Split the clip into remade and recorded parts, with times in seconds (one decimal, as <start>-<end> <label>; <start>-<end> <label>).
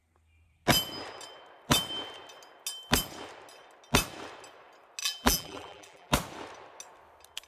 0.0-5.0 recorded; 5.0-6.1 remade; 6.1-7.5 recorded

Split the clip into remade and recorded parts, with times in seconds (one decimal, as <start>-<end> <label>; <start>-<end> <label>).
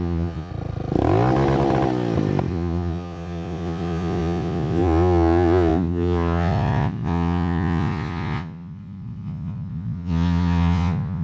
0.0-0.5 remade; 0.5-2.5 recorded; 2.5-11.2 remade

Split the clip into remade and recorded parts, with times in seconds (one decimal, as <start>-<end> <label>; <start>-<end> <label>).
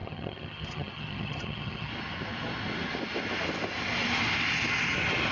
0.0-1.9 remade; 1.9-5.3 recorded